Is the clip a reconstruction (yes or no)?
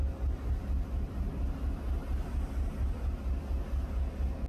no